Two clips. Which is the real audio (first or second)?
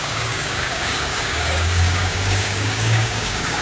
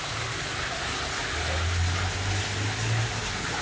second